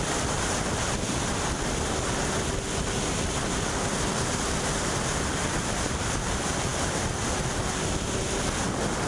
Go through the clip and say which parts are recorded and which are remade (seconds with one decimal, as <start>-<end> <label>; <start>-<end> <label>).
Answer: 0.0-9.1 recorded